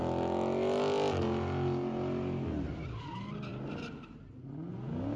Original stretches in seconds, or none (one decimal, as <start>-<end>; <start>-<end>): 0.0-5.2